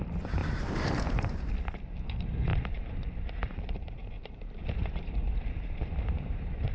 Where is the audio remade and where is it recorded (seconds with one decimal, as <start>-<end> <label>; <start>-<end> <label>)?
0.0-0.4 recorded; 0.4-1.5 remade; 1.5-2.5 recorded; 2.5-6.7 remade